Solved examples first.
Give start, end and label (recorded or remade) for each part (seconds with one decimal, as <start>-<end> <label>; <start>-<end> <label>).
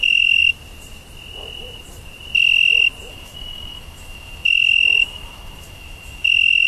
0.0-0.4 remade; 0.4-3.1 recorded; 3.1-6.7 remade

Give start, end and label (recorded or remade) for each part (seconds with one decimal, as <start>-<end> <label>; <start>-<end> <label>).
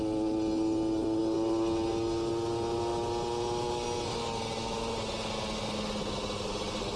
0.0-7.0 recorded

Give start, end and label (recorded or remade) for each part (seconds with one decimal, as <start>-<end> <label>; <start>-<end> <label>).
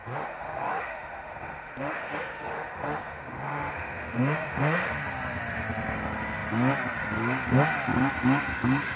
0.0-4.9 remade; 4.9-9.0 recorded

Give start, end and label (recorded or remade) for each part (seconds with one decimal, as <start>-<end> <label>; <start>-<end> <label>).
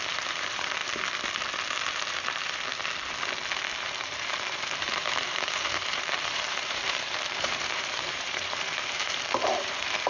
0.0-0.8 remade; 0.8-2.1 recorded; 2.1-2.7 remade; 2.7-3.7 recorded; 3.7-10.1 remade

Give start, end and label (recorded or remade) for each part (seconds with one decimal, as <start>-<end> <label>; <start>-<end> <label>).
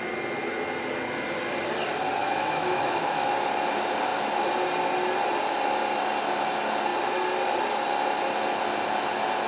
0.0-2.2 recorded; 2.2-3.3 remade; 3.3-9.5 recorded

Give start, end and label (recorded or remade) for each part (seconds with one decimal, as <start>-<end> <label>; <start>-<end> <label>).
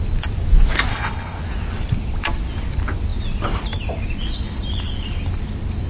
0.0-0.9 recorded; 0.9-1.4 remade; 1.4-5.9 recorded